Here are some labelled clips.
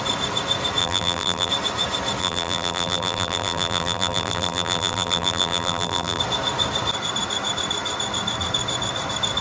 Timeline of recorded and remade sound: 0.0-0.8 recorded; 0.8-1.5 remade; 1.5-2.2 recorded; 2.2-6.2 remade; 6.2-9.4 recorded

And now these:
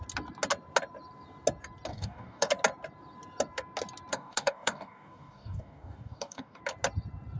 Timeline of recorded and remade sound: 0.0-1.9 recorded; 1.9-2.5 remade; 2.5-4.1 recorded; 4.1-6.6 remade; 6.6-7.4 recorded

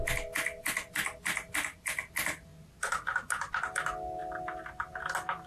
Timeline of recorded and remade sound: 0.0-5.5 recorded

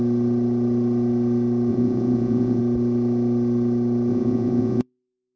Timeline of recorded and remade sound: 0.0-1.7 recorded; 1.7-2.6 remade; 2.6-4.1 recorded; 4.1-5.4 remade